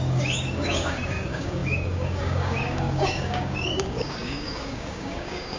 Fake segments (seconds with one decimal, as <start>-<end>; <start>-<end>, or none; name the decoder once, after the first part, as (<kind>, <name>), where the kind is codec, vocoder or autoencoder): 0.0-5.6 (codec, DAC)

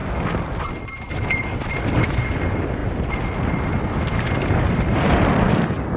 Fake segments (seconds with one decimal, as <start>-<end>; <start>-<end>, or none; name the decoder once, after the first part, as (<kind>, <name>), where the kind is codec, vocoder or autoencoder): 1.1-2.8 (vocoder, BigVGAN v2); 4.8-6.0

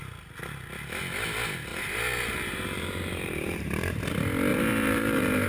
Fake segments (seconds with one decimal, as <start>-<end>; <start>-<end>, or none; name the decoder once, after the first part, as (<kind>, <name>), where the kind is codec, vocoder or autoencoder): 1.7-4.0 (vocoder, BigVGAN v2); 4.5-5.5

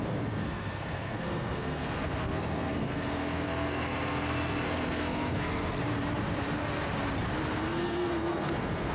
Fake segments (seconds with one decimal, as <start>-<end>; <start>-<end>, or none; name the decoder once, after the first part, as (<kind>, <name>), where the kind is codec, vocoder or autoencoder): 0.0-5.8 (codec, SNAC); 7.6-8.9